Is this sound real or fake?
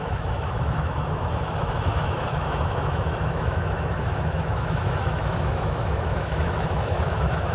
fake